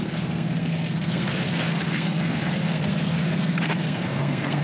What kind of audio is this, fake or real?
fake